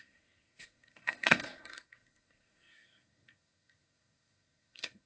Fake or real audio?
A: fake